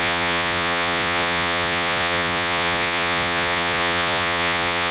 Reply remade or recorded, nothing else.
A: remade